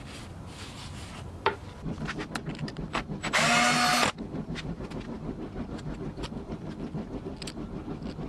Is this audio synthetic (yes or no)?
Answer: no